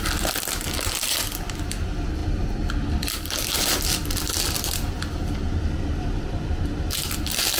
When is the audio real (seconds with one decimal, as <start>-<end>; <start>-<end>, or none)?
0.0-7.6